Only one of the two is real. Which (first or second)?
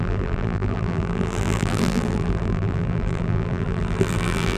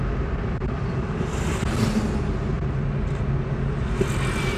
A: second